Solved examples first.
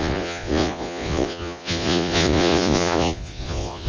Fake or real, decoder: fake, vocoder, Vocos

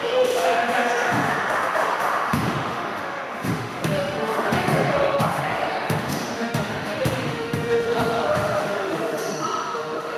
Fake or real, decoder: fake, autoencoder, DAC-VAE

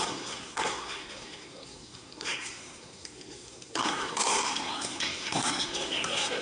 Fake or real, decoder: fake, codec, SNAC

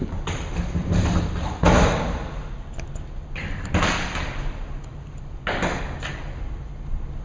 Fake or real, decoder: real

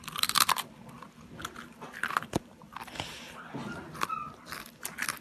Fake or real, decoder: fake, vocoder, BigVGAN v2